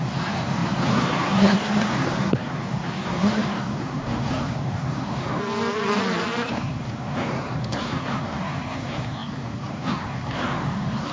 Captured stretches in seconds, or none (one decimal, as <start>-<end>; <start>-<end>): 5.4-6.5